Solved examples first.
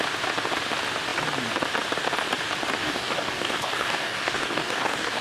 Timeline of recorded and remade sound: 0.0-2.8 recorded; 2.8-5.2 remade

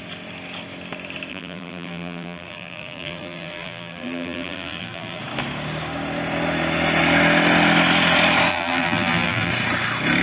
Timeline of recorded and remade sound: 0.0-1.3 recorded; 1.3-5.2 remade; 5.2-8.5 recorded; 8.5-9.5 remade; 9.5-10.2 recorded